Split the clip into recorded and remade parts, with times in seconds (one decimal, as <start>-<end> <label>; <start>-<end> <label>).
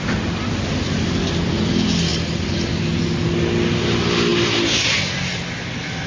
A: 0.0-4.3 recorded; 4.3-5.0 remade; 5.0-6.1 recorded